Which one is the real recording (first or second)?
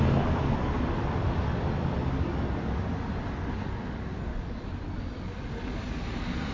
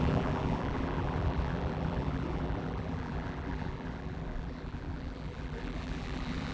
first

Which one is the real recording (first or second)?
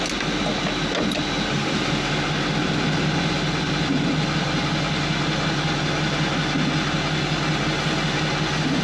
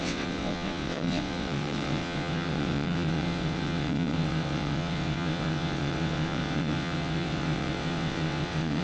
first